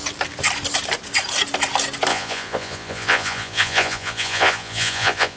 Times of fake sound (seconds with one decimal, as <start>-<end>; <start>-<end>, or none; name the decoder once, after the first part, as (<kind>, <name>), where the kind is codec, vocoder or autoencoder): 2.1-5.4 (vocoder, Vocos)